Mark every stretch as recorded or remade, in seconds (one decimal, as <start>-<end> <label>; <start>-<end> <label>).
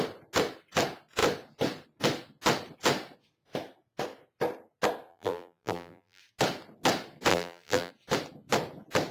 0.0-5.1 recorded; 5.1-6.2 remade; 6.2-7.3 recorded; 7.3-7.9 remade; 7.9-9.1 recorded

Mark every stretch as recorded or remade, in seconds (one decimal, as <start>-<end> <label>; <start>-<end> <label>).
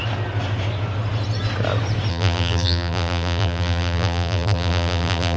0.0-2.1 recorded; 2.1-5.4 remade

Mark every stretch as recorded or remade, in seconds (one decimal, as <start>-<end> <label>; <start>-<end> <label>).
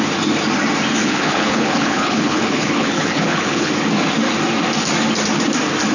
0.0-1.0 recorded; 1.0-3.7 remade; 3.7-5.9 recorded